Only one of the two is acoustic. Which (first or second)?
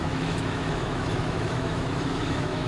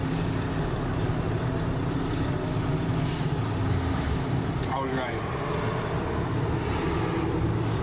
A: second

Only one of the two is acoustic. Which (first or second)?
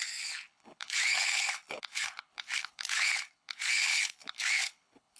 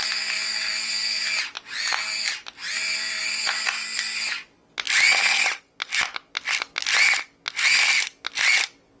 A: second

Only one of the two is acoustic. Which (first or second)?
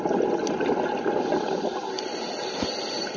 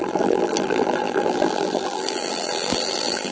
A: first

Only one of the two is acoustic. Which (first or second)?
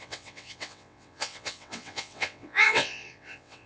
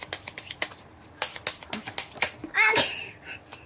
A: second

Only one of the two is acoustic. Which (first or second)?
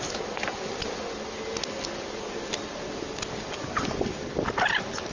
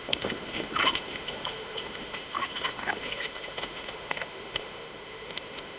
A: first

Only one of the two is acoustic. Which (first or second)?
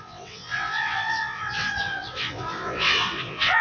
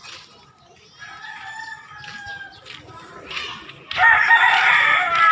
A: second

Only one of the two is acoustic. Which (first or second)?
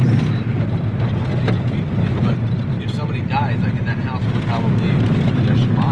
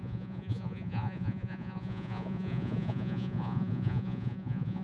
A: first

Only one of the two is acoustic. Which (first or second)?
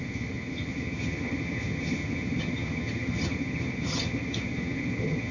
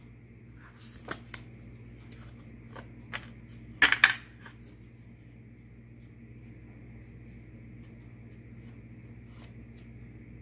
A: second